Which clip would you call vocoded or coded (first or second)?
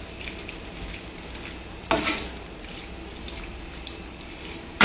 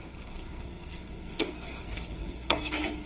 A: second